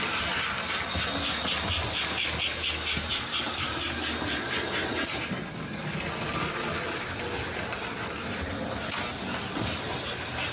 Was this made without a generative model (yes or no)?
yes